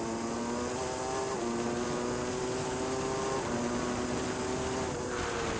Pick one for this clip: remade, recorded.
recorded